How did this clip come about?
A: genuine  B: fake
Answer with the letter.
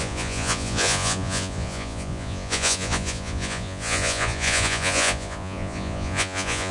B